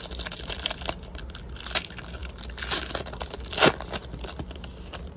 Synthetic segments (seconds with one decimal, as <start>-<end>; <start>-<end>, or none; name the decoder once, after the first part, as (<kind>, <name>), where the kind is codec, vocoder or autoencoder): none